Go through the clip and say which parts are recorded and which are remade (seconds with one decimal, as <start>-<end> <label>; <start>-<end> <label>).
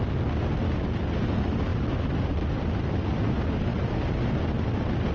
0.0-5.1 recorded